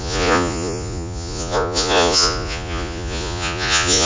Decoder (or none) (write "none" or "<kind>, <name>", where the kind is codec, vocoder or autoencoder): vocoder, Vocos